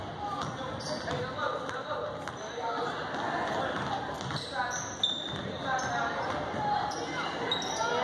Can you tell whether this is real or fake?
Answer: real